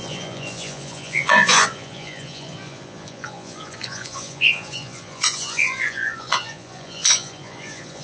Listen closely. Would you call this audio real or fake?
fake